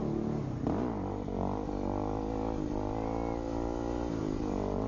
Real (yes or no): yes